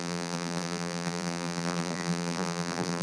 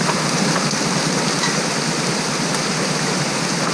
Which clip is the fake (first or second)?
first